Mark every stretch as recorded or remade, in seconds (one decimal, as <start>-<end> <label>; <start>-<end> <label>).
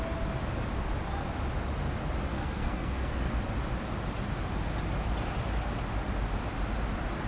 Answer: 0.0-2.3 recorded; 2.3-3.3 remade; 3.3-7.3 recorded